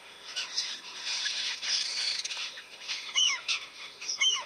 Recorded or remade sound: remade